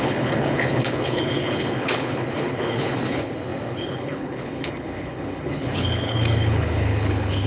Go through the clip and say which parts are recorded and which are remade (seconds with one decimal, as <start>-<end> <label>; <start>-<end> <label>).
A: 0.0-7.5 remade